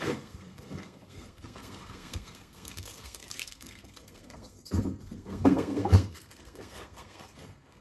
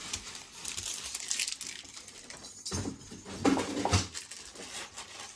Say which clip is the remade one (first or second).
first